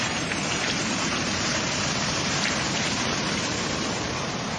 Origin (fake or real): fake